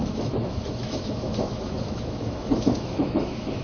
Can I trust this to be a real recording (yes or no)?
no